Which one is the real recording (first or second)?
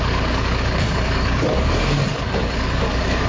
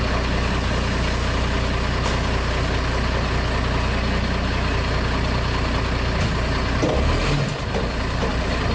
second